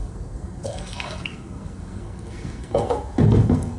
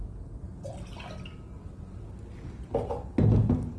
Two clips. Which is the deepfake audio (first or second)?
first